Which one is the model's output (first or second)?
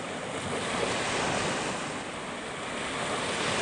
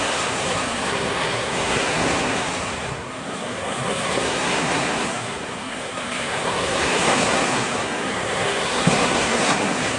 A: second